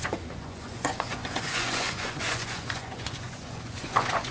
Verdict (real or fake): fake